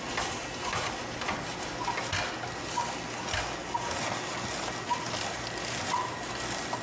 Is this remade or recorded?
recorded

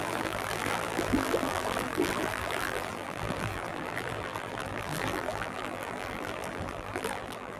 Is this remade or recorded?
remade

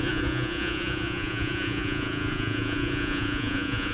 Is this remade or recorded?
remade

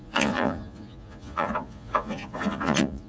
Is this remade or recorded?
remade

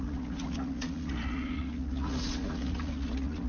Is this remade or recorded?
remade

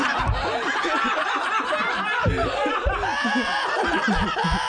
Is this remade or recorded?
recorded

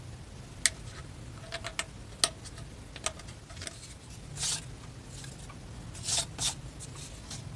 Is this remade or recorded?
recorded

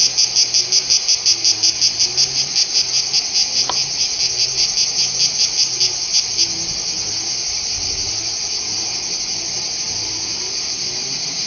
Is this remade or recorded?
recorded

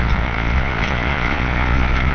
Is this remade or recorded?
remade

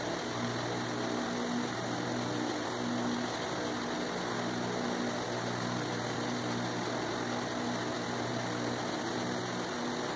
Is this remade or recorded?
recorded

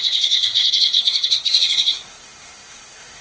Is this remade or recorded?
remade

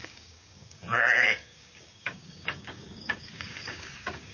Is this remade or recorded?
remade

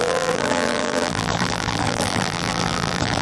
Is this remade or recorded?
remade